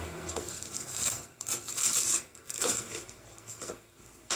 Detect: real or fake fake